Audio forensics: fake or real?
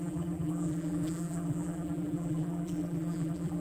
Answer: fake